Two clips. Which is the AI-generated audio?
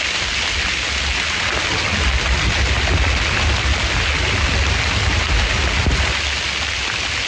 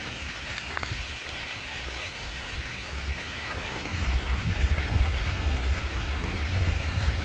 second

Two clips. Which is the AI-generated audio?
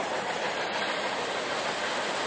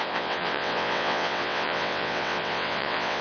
second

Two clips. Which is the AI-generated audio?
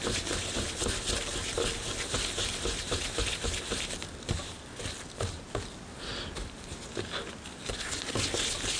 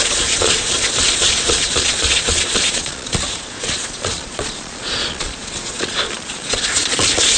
second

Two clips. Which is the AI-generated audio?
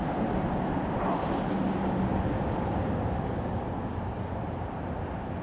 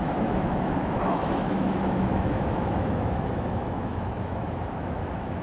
second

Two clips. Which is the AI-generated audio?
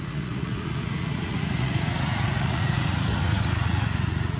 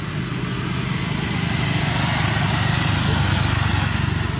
first